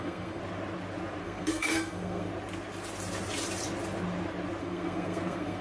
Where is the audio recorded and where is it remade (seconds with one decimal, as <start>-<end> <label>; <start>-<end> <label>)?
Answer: 0.0-0.4 remade; 0.4-1.2 recorded; 1.2-2.3 remade; 2.3-4.6 recorded; 4.6-5.6 remade